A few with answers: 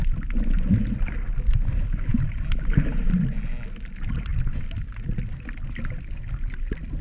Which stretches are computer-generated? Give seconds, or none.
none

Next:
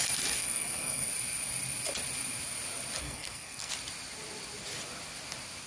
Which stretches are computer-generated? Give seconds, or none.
0.4-1.1; 3.0-3.7

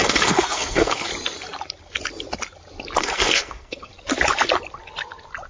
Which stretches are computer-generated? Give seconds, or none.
0.0-1.1; 3.0-3.9

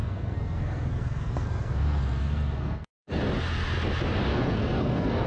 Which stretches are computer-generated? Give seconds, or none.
0.0-3.2; 4.3-5.3

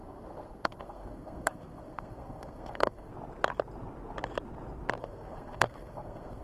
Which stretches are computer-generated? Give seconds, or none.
0.0-3.1; 5.0-6.4

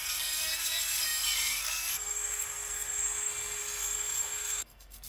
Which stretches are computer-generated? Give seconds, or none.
0.0-5.1

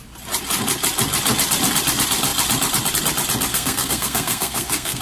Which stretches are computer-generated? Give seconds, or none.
3.5-5.0